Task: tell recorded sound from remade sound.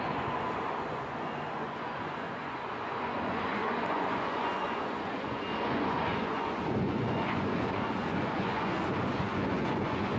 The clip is remade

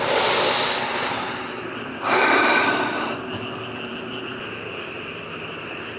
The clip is recorded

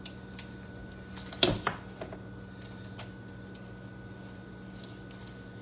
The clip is recorded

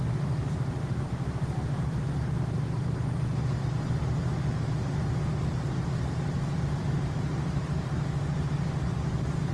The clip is remade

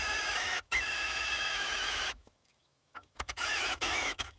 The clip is remade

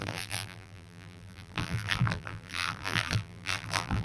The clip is remade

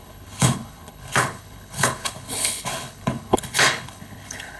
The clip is remade